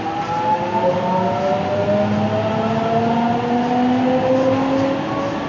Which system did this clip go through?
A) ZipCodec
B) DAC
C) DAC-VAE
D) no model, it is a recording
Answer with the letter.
D